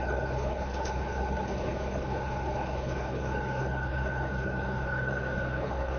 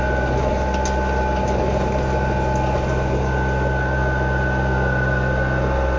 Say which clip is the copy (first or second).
first